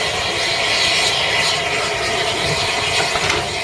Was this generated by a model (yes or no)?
no